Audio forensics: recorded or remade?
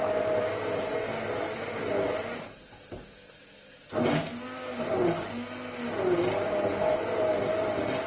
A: recorded